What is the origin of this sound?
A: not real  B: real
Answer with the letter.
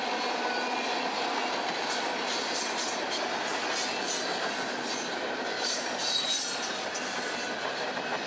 B